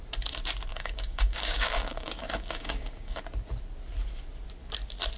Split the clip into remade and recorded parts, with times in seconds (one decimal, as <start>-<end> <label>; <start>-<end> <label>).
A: 0.0-0.7 recorded; 0.7-3.2 remade; 3.2-5.2 recorded